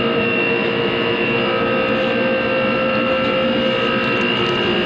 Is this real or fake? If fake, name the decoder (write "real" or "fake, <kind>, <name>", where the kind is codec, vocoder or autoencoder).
real